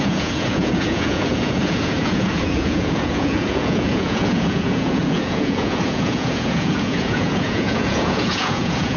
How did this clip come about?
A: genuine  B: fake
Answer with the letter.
B